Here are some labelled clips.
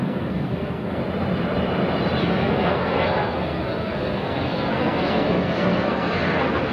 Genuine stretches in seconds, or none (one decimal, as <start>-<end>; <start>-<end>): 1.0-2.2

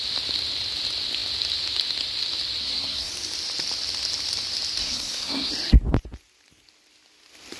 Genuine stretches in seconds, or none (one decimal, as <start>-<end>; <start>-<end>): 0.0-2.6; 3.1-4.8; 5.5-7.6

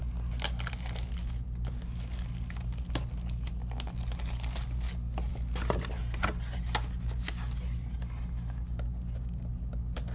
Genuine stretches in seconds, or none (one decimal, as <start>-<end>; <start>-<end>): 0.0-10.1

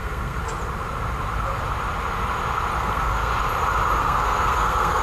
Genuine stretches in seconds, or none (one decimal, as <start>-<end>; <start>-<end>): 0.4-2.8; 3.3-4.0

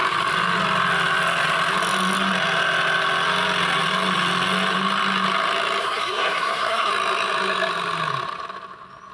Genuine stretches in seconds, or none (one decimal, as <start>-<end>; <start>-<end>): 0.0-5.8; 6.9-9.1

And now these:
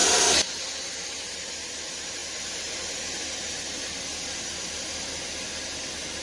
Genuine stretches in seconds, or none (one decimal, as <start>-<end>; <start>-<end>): 0.0-6.2